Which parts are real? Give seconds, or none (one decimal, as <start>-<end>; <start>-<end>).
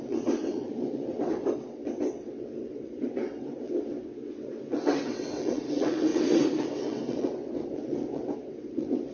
none